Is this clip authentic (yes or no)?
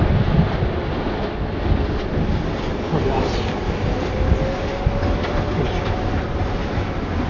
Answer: yes